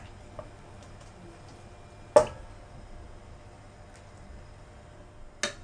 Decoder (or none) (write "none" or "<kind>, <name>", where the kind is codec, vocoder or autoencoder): none